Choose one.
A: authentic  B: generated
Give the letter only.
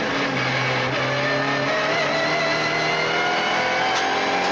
A